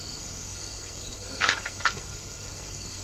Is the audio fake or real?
fake